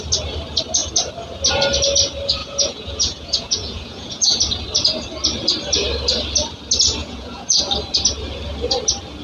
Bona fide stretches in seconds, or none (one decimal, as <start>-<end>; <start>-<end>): 0.0-2.4; 4.4-7.0; 7.6-9.2